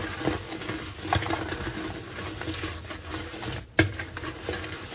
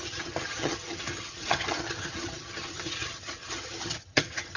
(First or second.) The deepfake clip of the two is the second